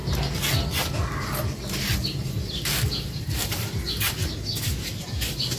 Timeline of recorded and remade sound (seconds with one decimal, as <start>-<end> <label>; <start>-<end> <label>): 0.0-2.2 recorded; 2.2-3.7 remade; 3.7-5.6 recorded